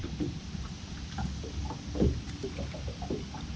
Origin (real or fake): real